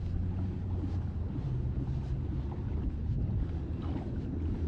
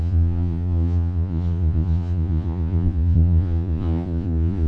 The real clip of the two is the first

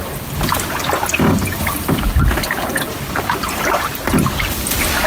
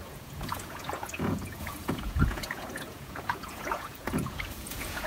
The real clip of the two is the first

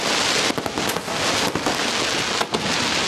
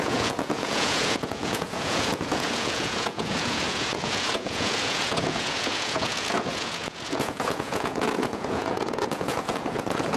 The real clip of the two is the first